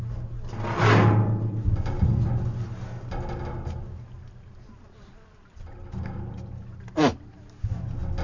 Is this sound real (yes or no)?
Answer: yes